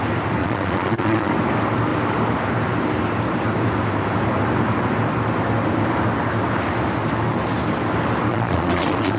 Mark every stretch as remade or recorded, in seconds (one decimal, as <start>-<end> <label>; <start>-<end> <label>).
0.0-0.4 recorded; 0.4-1.3 remade; 1.3-8.3 recorded; 8.3-9.2 remade